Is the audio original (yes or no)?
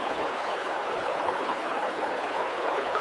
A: no